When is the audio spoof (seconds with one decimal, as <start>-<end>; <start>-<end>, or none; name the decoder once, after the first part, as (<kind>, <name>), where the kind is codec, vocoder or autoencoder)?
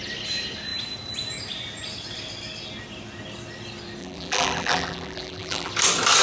4.0-5.7 (vocoder, BigVGAN v2)